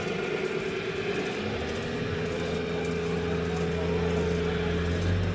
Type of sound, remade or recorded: recorded